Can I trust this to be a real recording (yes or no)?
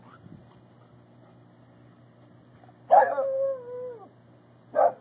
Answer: yes